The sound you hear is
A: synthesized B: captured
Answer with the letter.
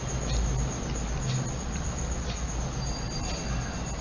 B